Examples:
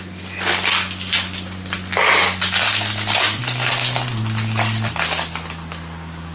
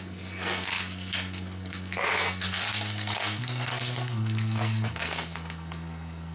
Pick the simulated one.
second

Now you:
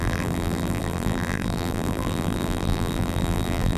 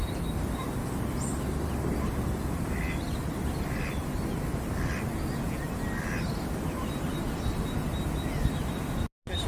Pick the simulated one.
first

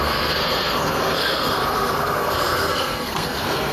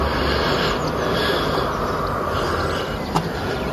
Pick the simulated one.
first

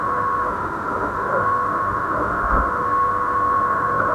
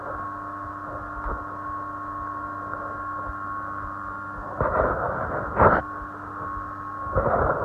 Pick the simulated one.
first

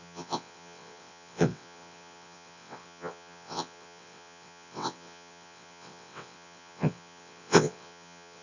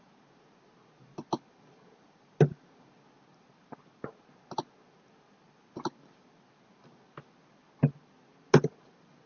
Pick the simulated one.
first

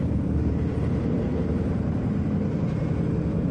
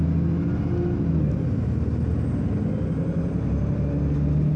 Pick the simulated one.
first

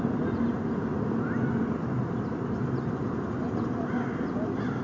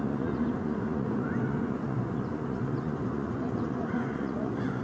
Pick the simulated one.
second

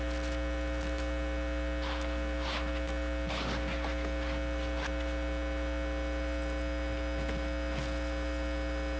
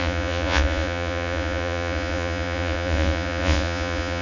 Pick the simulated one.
second